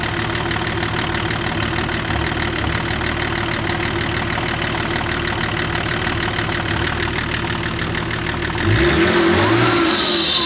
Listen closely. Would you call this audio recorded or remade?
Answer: recorded